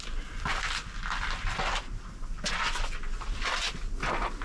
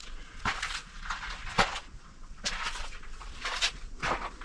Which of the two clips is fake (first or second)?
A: second